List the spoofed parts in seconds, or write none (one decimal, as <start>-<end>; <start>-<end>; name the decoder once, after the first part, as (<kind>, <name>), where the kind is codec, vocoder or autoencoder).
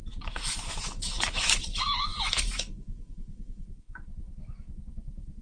0.0-5.4 (autoencoder, DAC-VAE)